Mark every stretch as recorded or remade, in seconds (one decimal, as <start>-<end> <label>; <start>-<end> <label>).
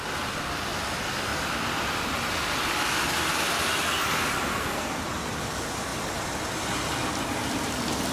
0.0-4.5 recorded; 4.5-5.0 remade; 5.0-8.1 recorded